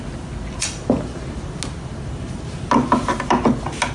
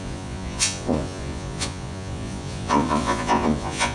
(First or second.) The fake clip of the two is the second